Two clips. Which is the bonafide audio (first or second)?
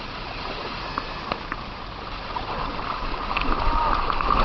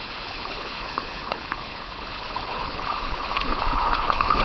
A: first